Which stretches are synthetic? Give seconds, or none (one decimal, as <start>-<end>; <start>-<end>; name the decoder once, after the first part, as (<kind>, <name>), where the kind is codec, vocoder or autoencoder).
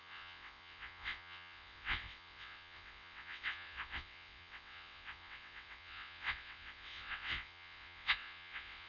0.0-8.9 (vocoder, WaveNeXt)